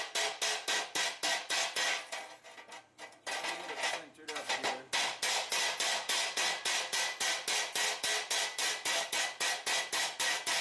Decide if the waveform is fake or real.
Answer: real